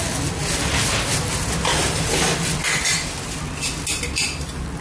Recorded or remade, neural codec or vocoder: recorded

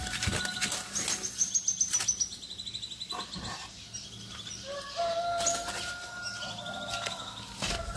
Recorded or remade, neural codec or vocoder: recorded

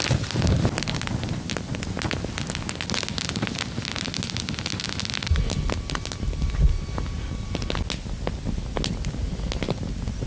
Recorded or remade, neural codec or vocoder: recorded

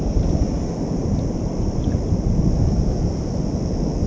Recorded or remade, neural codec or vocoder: recorded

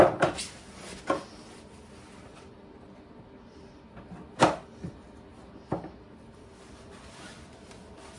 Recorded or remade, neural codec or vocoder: recorded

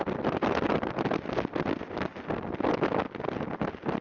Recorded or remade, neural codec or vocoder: recorded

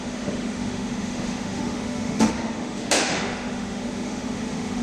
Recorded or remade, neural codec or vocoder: remade, autoencoder, DAC-VAE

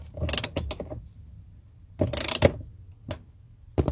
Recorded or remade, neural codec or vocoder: recorded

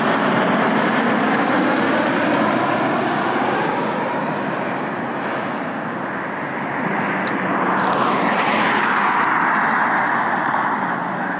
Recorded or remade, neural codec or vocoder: recorded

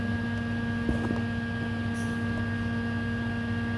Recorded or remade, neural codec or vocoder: recorded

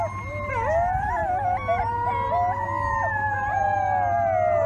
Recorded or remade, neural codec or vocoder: recorded